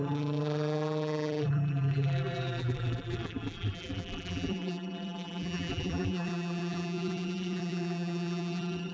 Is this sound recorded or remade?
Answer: remade